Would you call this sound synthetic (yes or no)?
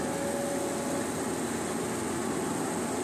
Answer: no